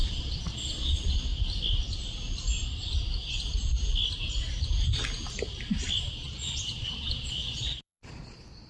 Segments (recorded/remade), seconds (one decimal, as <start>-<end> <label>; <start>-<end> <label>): 0.0-1.3 remade; 1.3-6.0 recorded; 6.0-8.7 remade